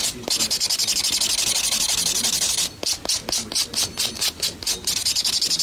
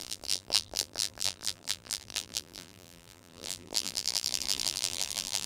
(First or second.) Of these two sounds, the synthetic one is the second